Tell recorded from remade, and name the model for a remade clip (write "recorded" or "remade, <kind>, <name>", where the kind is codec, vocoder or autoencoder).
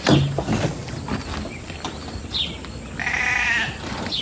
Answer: recorded